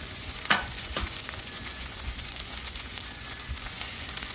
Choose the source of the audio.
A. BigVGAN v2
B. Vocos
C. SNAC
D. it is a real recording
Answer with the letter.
B